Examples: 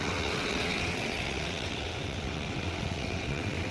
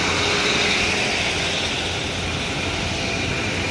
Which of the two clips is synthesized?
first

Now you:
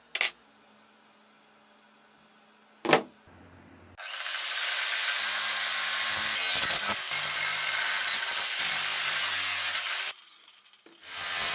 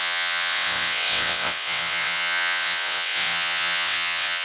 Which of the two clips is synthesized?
second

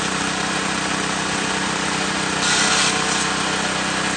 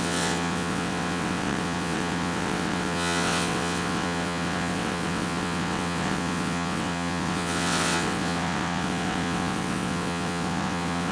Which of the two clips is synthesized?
second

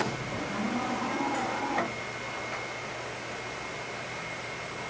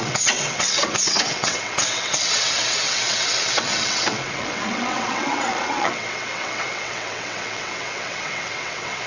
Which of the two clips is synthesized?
second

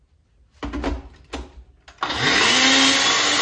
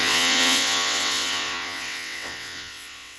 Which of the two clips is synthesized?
second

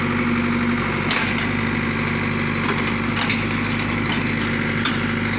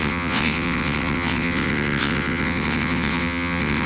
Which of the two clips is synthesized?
second